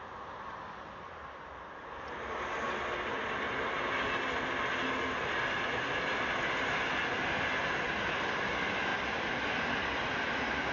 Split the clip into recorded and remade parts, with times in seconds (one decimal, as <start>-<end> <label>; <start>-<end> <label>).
0.0-10.7 recorded

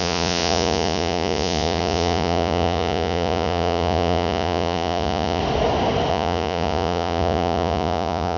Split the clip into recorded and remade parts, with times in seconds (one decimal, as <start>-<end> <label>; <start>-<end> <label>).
0.0-5.4 remade; 5.4-6.1 recorded; 6.1-8.4 remade